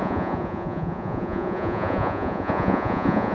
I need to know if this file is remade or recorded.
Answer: remade